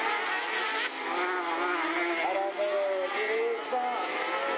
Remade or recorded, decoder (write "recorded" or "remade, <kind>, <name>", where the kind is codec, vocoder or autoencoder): recorded